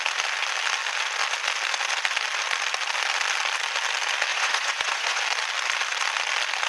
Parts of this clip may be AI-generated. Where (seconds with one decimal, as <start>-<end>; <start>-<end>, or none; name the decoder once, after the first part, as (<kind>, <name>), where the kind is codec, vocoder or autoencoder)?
4.3-5.2 (vocoder, Vocos)